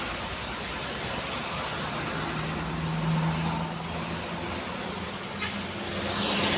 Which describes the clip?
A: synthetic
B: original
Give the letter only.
B